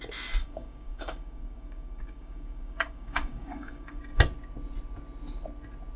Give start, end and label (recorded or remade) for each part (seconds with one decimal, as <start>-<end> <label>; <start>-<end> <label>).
0.0-0.4 recorded; 0.4-4.0 remade; 4.0-6.0 recorded